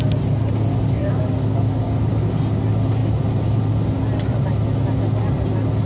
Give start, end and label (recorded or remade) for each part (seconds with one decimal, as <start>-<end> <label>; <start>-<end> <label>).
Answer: 0.0-0.7 recorded; 0.7-2.1 remade; 2.1-5.9 recorded